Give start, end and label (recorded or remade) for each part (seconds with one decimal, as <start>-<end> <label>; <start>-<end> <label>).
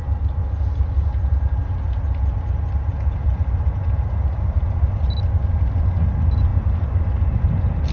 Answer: 0.0-7.9 recorded